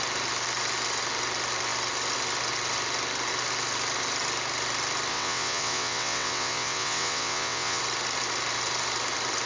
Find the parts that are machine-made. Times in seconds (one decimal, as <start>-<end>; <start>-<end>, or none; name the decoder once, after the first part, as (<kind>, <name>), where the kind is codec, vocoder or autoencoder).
5.1-7.8 (vocoder, WaveNeXt)